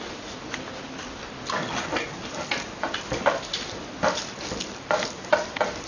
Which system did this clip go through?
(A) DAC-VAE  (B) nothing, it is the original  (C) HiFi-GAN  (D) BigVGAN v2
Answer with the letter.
B